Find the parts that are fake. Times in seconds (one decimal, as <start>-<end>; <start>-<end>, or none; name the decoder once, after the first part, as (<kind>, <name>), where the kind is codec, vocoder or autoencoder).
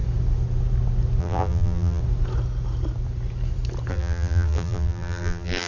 1.2-2.0 (vocoder, BigVGAN v2); 3.9-5.7